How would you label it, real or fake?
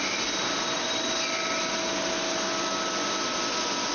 real